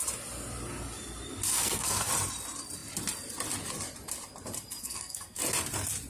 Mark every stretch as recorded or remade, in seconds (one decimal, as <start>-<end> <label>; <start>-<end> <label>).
0.0-1.5 recorded; 1.5-2.1 remade; 2.1-4.8 recorded; 4.8-5.4 remade; 5.4-6.1 recorded